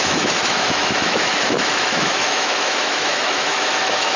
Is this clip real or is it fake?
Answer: fake